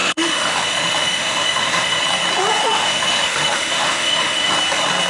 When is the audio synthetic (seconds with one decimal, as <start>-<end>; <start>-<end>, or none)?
0.0-2.0; 2.6-4.5